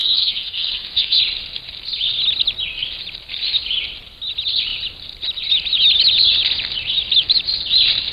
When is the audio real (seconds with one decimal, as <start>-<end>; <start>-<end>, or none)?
1.2-8.1